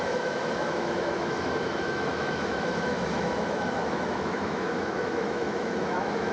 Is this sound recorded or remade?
remade